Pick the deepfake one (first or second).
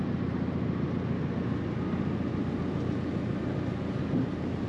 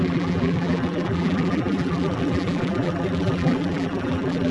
second